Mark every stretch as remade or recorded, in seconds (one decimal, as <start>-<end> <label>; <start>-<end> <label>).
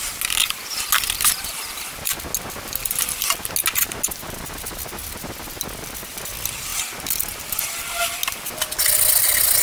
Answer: 0.0-9.6 recorded